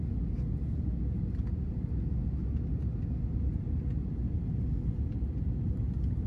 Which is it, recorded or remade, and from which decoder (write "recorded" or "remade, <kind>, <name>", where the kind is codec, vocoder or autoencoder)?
recorded